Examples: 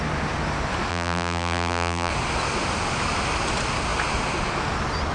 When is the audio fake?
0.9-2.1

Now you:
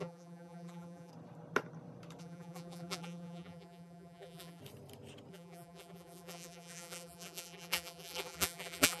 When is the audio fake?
0.0-1.1; 2.2-4.6; 5.3-9.0

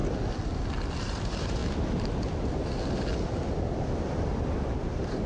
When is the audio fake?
1.0-1.6; 4.8-5.3

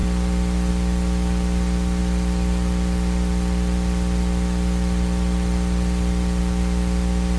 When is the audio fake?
0.0-0.7; 2.0-6.4

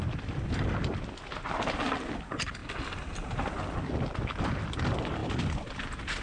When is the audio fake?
none

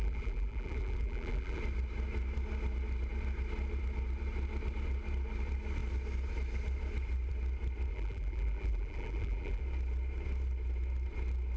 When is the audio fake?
0.0-1.6; 7.9-9.6

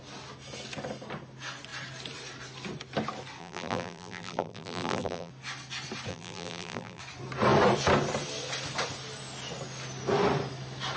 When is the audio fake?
3.4-5.3; 6.1-7.0

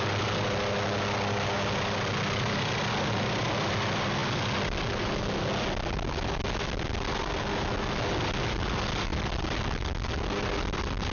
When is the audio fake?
9.1-9.8